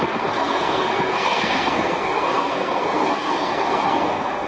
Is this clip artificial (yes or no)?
yes